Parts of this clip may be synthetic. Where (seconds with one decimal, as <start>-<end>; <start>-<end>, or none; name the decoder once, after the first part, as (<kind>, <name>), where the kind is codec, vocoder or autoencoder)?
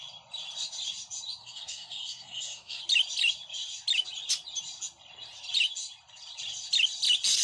1.4-2.8 (codec, SNAC)